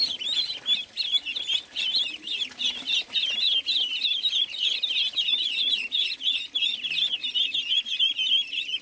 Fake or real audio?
real